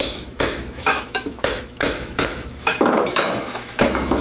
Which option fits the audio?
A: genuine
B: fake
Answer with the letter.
B